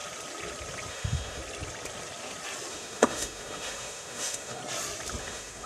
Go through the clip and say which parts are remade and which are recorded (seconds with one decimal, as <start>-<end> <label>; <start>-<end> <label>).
0.0-0.9 recorded; 0.9-1.4 remade; 1.4-2.7 recorded; 2.7-4.6 remade; 4.6-5.2 recorded; 5.2-5.7 remade